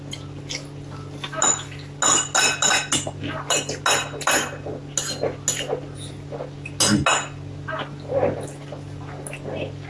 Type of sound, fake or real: real